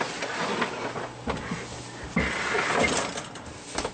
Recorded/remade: recorded